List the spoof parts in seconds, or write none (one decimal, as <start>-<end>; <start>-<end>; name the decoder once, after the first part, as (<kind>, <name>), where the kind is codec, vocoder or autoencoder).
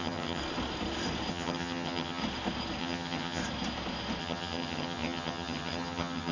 0.0-0.4 (vocoder, HiFi-GAN); 1.3-2.2; 2.8-3.4; 4.2-6.3